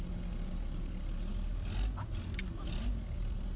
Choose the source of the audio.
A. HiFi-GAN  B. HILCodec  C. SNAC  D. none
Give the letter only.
D